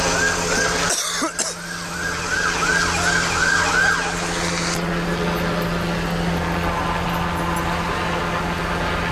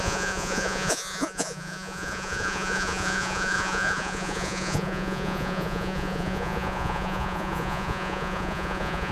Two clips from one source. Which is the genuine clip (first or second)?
first